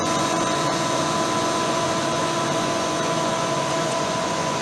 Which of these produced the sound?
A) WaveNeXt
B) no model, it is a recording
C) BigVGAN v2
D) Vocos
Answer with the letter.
D